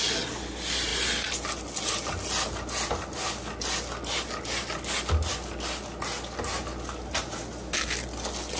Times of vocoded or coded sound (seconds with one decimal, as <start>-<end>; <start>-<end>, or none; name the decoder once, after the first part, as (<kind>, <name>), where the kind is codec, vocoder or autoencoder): none